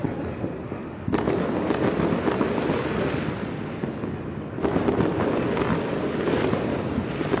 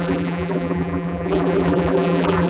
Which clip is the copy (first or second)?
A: second